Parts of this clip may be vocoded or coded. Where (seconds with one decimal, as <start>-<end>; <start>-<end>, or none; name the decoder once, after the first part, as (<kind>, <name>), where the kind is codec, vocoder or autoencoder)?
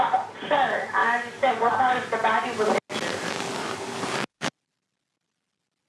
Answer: 1.0-1.5 (codec, DAC); 3.1-4.5